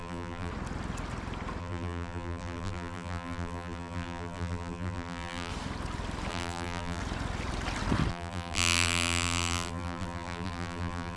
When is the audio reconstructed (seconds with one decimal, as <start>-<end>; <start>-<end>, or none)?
0.0-0.5; 1.6-5.5; 6.3-7.0; 8.1-11.2